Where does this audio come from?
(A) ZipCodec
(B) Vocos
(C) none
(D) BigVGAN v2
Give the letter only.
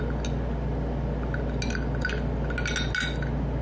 C